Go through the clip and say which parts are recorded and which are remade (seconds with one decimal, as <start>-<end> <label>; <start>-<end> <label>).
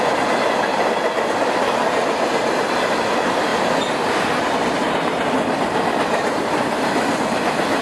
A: 0.0-7.8 recorded